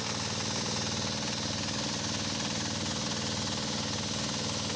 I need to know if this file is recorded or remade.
recorded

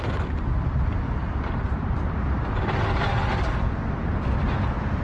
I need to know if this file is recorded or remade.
recorded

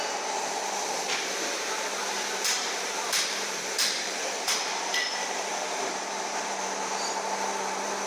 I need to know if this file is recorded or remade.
remade